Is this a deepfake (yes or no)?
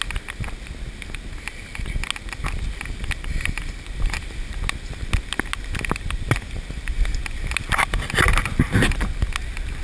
no